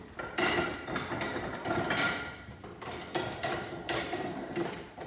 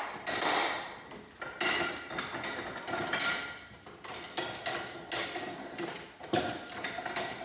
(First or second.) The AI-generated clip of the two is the first